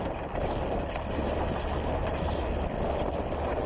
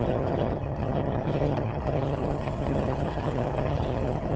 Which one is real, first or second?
first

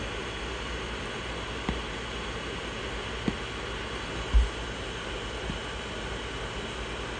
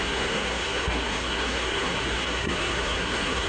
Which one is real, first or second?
first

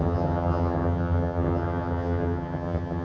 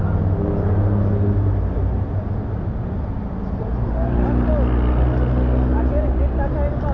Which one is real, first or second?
second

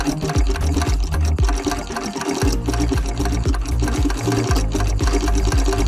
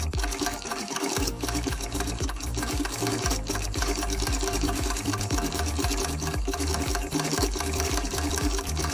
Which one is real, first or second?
first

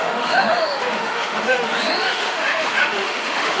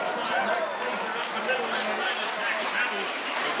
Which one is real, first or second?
second